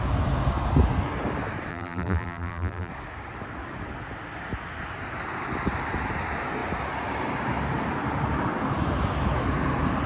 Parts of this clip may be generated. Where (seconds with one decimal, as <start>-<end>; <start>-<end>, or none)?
1.7-2.9